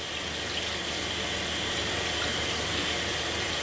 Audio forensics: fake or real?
real